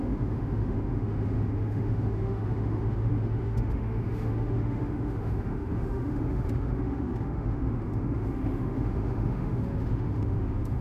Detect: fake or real fake